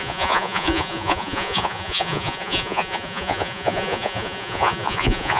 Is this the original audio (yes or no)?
no